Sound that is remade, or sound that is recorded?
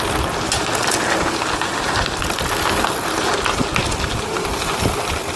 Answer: recorded